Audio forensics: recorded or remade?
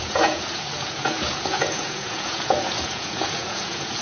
remade